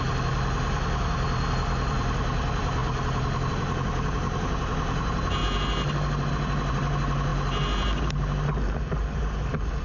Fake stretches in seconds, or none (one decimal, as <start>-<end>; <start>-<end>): none